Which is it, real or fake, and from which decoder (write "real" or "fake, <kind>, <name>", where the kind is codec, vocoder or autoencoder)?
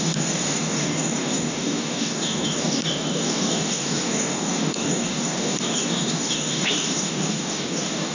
fake, codec, DAC